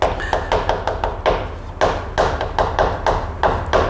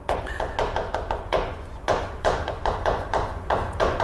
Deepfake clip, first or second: second